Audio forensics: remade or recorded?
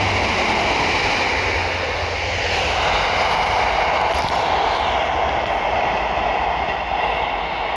recorded